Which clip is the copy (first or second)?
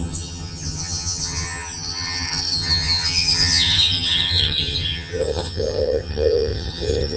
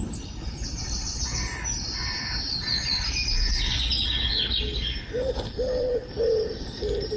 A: first